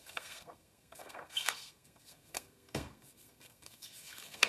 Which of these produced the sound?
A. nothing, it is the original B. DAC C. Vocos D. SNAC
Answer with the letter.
D